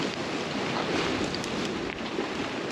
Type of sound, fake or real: real